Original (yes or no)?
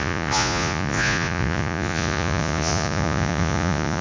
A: no